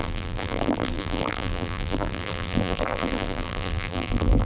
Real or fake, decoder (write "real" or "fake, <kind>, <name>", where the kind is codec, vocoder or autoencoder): fake, vocoder, BigVGAN v2